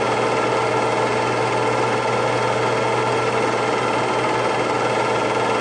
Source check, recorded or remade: recorded